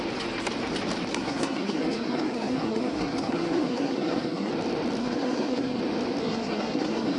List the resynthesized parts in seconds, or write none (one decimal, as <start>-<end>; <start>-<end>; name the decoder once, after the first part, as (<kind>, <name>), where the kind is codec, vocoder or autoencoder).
1.1-4.5 (codec, SNAC); 5.0-5.8; 6.2-7.2